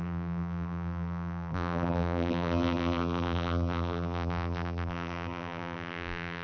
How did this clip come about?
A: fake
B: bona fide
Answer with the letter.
A